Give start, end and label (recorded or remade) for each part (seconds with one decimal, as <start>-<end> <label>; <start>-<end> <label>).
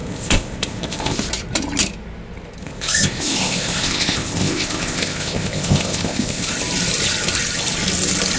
0.0-1.3 remade; 1.3-2.6 recorded; 2.6-6.5 remade; 6.5-8.4 recorded